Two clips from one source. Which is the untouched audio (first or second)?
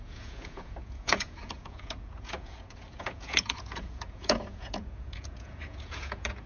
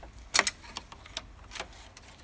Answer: second